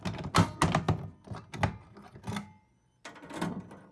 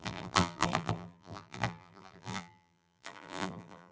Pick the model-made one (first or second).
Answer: second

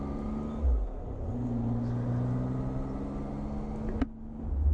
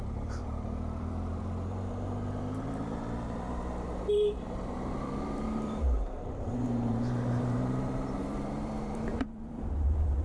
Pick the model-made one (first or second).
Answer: second